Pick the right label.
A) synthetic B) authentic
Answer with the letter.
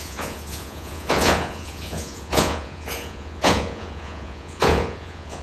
A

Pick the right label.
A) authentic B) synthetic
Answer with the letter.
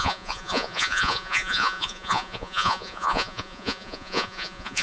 B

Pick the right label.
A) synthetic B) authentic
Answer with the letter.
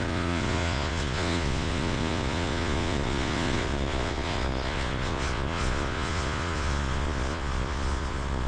A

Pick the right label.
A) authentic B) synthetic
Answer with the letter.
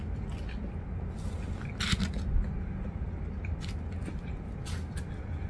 A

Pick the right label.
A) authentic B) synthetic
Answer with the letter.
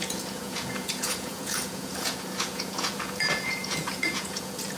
B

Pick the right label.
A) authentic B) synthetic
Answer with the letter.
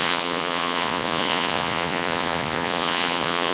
B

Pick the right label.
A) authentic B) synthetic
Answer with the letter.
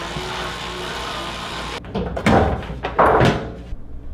A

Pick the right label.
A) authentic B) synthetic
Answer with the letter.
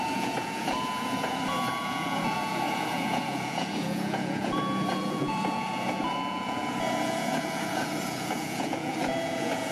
B